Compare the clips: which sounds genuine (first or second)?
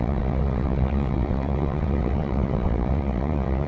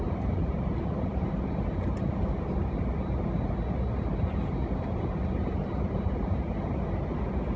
second